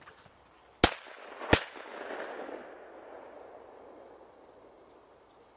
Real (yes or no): yes